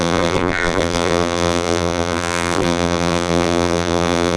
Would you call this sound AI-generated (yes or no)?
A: yes